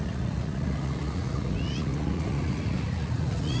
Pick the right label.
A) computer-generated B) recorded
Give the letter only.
A